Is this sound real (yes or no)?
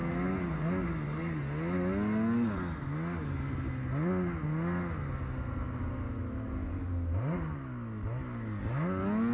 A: yes